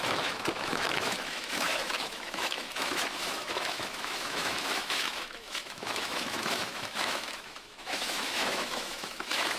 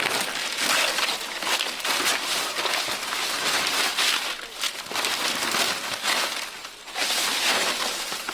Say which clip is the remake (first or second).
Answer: first